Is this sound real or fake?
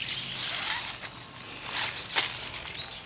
real